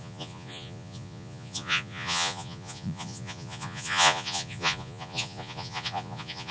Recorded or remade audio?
remade